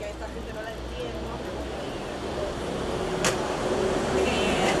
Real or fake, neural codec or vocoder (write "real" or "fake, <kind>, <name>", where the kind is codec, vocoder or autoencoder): real